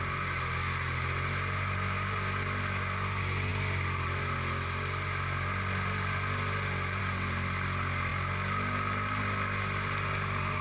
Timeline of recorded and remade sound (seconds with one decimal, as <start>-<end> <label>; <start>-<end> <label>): 0.0-10.6 recorded

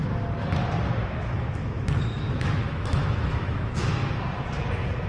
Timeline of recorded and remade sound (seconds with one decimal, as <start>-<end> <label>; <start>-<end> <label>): 0.0-1.0 recorded; 1.0-4.1 remade; 4.1-5.1 recorded

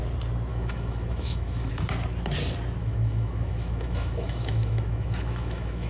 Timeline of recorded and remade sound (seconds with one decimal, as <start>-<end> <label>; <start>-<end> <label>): 0.0-0.5 recorded; 0.5-1.7 remade; 1.7-2.8 recorded; 2.8-5.9 remade

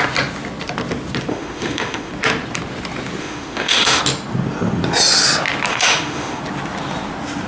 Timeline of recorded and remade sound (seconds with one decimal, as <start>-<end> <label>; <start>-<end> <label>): 0.0-1.3 recorded; 1.3-2.1 remade; 2.1-3.2 recorded; 3.2-4.0 remade; 4.0-5.7 recorded; 5.7-6.4 remade; 6.4-7.5 recorded

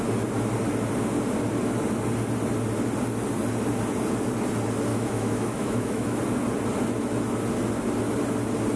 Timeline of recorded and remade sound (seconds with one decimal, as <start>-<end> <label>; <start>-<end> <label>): 0.0-4.9 recorded; 4.9-6.2 remade; 6.2-8.8 recorded

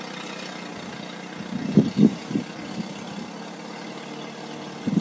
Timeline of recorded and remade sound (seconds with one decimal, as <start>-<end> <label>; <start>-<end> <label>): 0.0-5.0 recorded